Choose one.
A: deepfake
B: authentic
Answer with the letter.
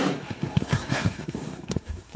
A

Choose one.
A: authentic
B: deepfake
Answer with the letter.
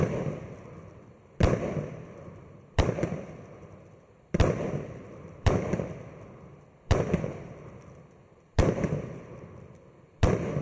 B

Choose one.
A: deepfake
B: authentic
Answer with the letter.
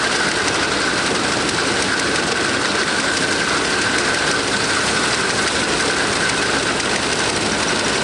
B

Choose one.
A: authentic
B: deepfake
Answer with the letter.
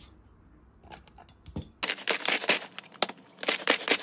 A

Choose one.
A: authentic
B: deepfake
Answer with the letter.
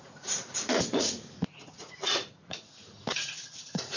B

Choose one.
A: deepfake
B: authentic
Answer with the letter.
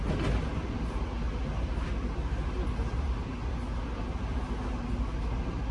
B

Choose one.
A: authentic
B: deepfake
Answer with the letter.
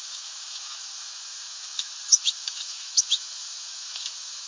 B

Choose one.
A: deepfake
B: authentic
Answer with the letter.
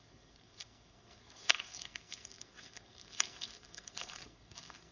A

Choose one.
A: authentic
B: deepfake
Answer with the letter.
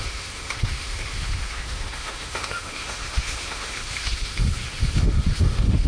B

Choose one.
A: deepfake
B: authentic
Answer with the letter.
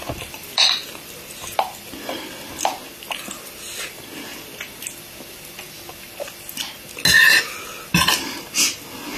B